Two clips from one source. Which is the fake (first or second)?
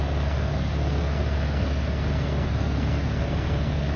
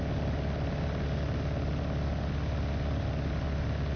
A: first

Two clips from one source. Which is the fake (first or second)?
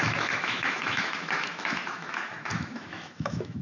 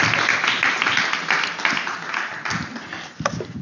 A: first